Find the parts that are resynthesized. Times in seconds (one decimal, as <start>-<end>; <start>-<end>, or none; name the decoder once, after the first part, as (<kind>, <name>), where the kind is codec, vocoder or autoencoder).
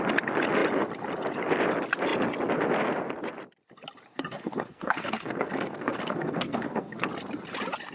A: 4.1-7.1 (codec, SNAC)